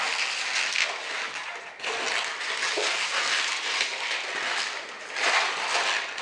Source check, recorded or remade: recorded